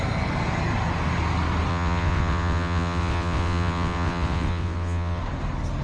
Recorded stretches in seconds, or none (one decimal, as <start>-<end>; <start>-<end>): 0.0-1.7; 5.2-5.8